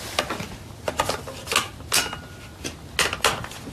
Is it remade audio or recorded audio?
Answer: recorded